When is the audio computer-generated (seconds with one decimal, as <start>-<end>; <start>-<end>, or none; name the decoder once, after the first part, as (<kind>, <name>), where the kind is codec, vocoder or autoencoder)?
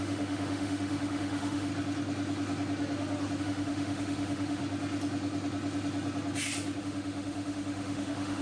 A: 0.0-1.7 (autoencoder, DAC-VAE); 3.4-4.6; 6.8-8.4